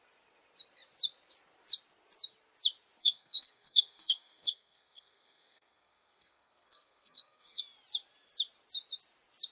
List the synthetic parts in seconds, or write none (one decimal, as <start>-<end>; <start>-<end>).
3.0-7.6